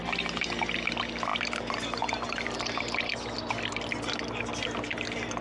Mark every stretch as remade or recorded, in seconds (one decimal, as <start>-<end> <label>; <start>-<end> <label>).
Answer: 0.0-5.4 recorded